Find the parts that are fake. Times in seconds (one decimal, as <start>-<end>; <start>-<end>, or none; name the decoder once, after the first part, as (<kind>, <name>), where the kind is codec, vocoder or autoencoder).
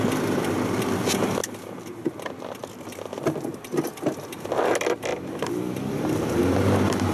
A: 3.1-4.3 (vocoder, BigVGAN v2); 5.1-6.4